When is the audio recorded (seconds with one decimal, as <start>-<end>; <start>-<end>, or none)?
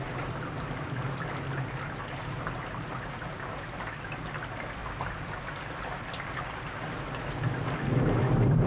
0.0-8.7